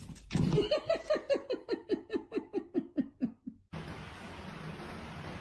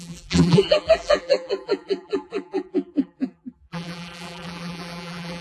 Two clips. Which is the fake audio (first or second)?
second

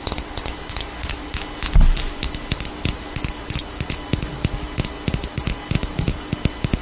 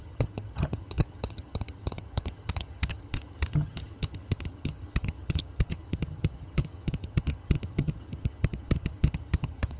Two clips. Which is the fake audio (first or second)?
second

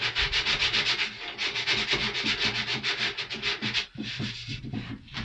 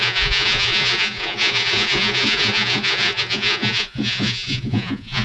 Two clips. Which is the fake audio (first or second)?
second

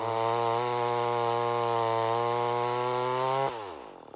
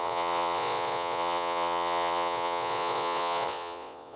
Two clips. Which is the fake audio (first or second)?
second